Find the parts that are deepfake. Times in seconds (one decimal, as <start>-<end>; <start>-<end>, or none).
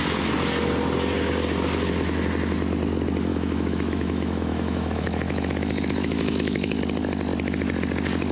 3.3-6.8